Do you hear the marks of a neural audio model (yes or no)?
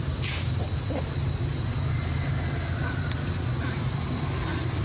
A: no